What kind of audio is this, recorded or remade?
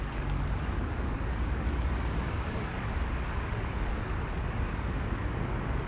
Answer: remade